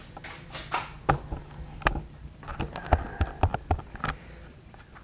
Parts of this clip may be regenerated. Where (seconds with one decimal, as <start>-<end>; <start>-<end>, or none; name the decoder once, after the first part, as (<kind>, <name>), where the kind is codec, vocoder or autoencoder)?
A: none